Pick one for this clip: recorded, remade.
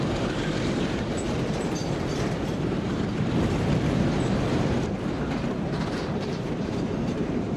remade